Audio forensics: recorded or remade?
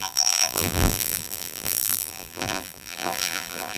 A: remade